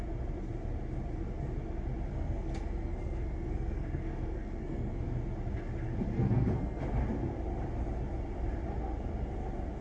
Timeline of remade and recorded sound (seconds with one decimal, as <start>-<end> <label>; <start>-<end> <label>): 0.0-2.1 recorded; 2.1-5.0 remade; 5.0-6.1 recorded; 6.1-6.8 remade; 6.8-9.8 recorded